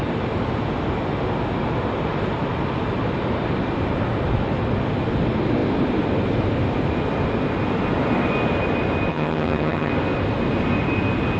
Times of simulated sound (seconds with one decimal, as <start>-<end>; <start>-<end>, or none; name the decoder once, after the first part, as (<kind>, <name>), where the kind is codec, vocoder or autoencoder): 9.1-9.9 (vocoder, HiFi-GAN)